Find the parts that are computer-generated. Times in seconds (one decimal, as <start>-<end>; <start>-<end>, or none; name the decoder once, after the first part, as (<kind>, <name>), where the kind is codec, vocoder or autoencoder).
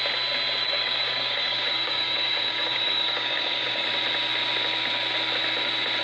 0.6-3.9 (codec, DAC)